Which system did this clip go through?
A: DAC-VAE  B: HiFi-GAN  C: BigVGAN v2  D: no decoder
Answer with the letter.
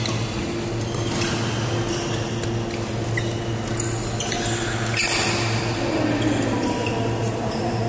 D